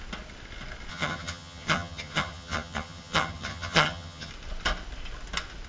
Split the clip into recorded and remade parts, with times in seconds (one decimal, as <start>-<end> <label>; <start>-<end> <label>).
0.0-0.9 recorded; 0.9-4.3 remade; 4.3-5.7 recorded